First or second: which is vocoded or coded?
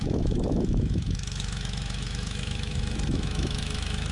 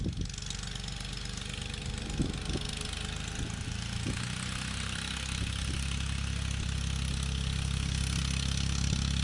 first